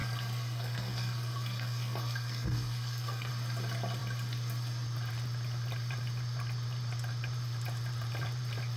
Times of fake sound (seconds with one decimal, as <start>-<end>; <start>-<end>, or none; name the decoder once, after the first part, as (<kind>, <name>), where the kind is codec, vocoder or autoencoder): 0.0-3.3 (codec, SNAC)